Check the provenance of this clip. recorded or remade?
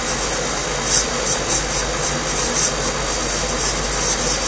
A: recorded